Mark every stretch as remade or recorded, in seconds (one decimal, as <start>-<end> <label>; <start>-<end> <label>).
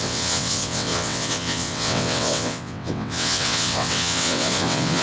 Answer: 0.0-5.0 remade